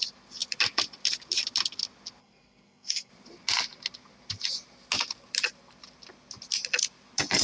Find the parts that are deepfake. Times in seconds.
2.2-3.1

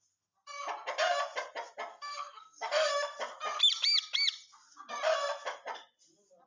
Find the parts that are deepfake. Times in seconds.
1.9-2.9

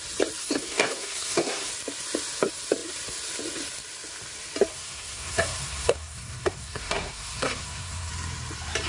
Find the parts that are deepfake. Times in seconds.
0.4-1.7; 4.7-8.1

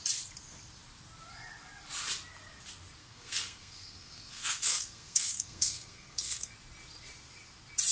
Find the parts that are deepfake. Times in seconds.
3.0-6.5